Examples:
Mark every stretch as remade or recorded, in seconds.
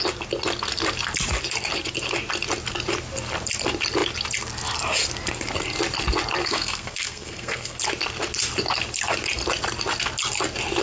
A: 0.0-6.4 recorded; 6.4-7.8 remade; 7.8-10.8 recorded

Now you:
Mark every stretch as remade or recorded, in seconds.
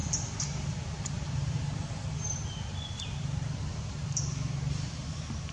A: 0.0-5.5 recorded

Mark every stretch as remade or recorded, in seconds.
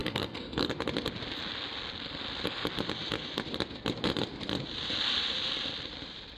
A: 0.0-0.7 remade; 0.7-6.4 recorded